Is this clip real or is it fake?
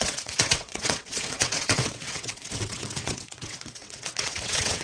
fake